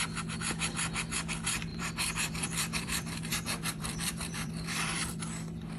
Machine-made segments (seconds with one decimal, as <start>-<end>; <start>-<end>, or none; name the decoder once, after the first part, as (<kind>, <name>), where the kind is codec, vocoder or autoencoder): 1.7-5.2 (vocoder, BigVGAN v2)